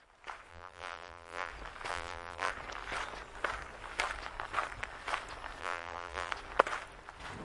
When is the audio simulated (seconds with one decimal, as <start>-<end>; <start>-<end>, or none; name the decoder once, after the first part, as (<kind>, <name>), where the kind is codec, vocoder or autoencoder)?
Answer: 0.5-1.5 (vocoder, BigVGAN v2); 1.9-2.5; 5.6-6.3